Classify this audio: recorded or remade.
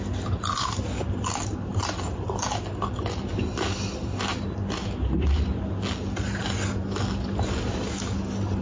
recorded